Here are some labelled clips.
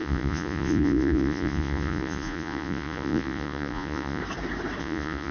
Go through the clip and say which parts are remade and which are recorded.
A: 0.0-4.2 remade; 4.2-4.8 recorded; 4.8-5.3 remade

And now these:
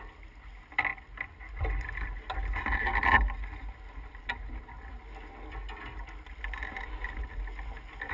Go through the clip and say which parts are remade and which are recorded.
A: 0.0-8.1 recorded

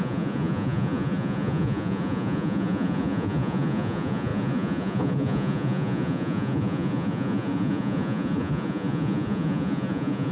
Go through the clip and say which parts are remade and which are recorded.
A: 0.0-10.3 remade

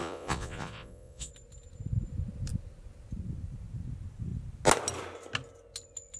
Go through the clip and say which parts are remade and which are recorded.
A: 0.0-1.3 remade; 1.3-6.2 recorded